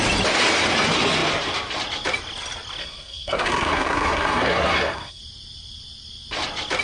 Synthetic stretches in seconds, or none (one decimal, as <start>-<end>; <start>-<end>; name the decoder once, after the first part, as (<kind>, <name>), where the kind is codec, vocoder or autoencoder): 2.8-5.2 (codec, SNAC)

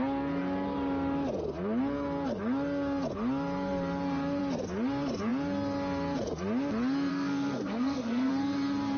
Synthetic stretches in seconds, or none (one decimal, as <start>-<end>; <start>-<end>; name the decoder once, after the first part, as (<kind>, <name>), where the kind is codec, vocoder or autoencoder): 7.1-8.3 (codec, SNAC)